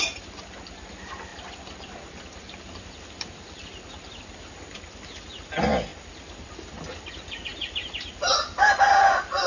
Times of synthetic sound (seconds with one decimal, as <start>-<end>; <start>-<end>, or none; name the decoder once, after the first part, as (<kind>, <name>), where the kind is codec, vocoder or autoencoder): none